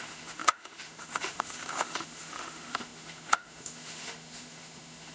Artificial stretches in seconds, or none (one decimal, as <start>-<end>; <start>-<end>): 0.0-5.1